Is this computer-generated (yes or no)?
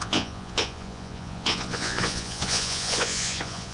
yes